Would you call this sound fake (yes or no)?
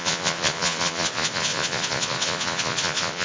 yes